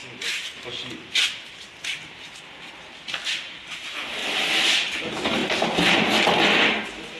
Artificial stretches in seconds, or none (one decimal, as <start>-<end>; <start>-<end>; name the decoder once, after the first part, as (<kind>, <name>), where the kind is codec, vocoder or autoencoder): none